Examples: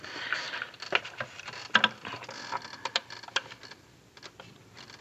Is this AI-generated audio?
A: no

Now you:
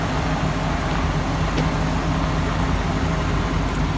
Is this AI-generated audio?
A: no